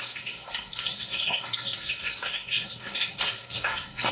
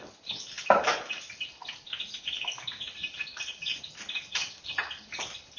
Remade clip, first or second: first